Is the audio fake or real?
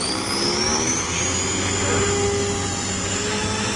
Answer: real